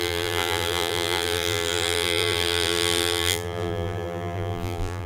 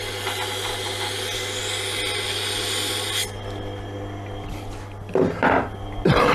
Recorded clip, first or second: second